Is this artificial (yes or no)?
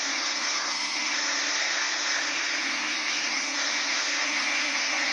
yes